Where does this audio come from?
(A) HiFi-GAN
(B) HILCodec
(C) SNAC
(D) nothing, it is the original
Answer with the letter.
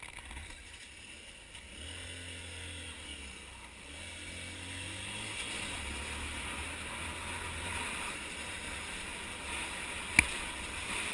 D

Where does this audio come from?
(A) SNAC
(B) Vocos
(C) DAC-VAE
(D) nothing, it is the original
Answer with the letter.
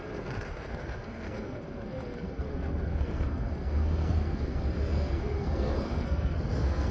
A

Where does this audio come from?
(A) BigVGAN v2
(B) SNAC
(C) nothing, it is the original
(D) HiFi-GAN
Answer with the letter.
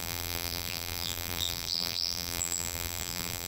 A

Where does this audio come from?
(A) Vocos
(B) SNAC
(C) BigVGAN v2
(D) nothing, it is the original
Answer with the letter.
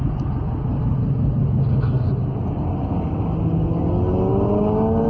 D